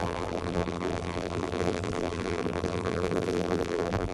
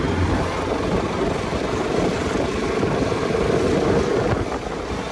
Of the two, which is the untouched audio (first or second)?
second